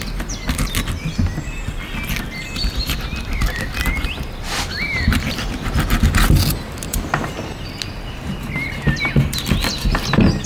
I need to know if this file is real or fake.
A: real